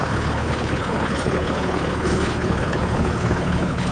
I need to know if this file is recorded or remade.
remade